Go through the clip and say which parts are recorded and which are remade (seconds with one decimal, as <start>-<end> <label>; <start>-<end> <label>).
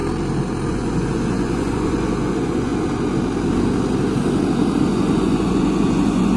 0.0-0.7 recorded; 0.7-2.7 remade; 2.7-4.9 recorded; 4.9-6.4 remade